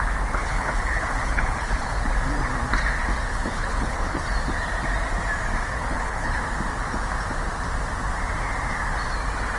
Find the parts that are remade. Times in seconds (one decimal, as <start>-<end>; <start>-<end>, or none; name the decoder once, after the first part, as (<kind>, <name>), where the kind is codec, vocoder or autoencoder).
0.4-2.0 (codec, HILCodec); 3.3-4.2; 5.7-6.4